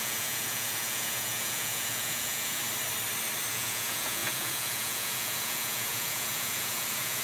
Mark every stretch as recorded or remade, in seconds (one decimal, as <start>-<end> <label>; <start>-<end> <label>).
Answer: 0.0-2.6 remade; 2.6-3.5 recorded; 3.5-7.2 remade

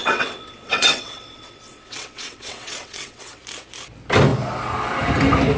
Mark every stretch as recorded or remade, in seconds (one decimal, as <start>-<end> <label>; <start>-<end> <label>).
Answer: 0.0-3.4 remade; 3.4-5.6 recorded